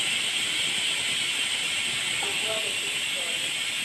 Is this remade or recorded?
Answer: recorded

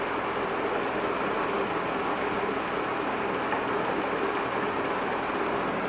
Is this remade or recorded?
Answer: recorded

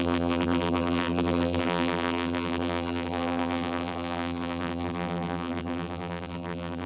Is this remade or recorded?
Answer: remade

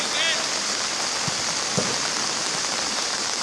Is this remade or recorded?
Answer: recorded